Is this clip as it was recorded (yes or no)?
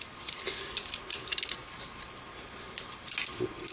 yes